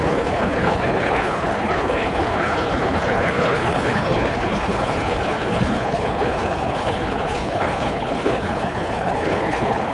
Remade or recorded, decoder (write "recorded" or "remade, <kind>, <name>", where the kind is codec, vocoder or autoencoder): remade, codec, HILCodec